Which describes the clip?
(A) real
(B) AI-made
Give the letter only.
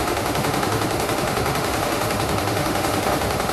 B